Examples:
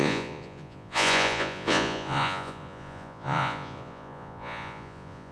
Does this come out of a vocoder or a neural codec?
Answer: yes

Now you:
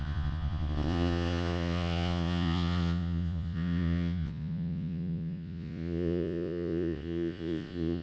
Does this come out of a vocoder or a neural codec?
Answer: yes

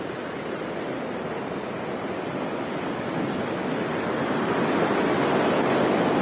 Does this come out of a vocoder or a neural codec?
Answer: no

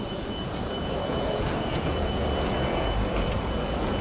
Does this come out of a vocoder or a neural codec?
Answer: yes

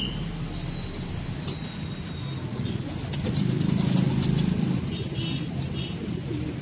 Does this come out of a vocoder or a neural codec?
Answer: no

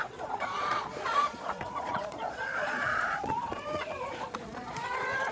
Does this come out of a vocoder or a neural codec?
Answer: yes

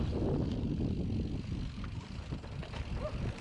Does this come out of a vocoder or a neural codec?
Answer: no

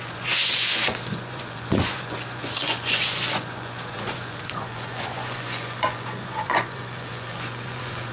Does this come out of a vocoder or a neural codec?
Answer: yes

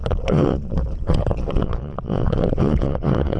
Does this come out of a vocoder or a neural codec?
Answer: yes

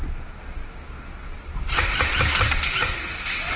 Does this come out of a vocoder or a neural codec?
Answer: no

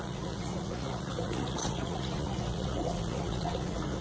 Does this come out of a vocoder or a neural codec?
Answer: yes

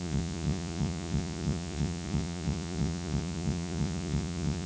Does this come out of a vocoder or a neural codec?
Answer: yes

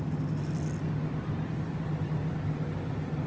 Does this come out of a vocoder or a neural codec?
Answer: no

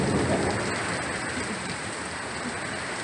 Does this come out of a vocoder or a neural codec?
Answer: no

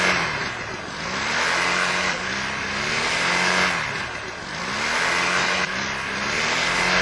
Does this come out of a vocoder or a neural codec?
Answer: no